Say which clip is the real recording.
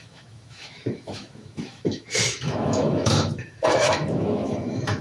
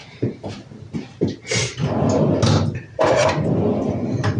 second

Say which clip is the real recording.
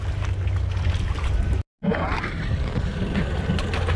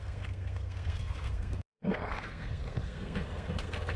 first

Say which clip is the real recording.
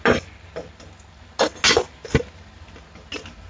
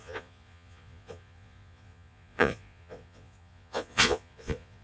first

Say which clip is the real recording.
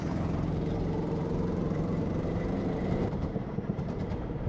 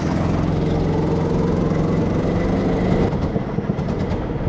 second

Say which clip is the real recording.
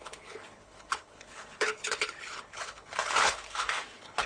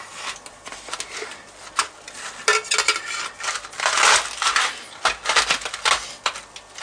second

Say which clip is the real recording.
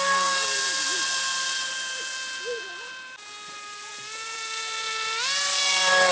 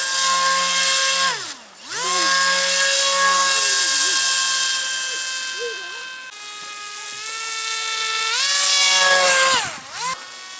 second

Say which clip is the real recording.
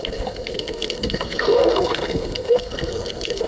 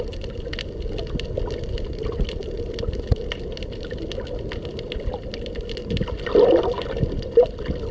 second